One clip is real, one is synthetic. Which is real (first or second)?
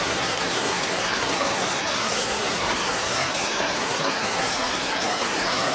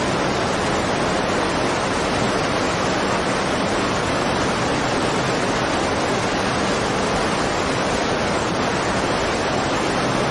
second